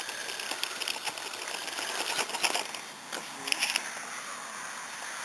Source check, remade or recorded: recorded